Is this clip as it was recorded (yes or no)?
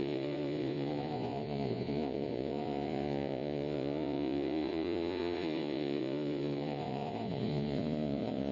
no